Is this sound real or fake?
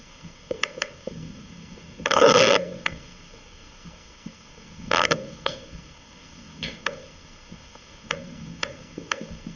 fake